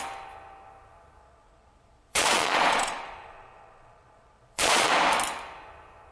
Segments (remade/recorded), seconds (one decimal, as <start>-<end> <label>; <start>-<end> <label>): 0.0-1.2 recorded; 1.2-4.9 remade; 4.9-6.1 recorded